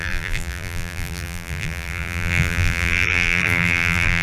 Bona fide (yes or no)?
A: no